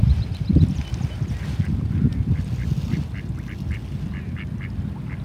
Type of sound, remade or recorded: recorded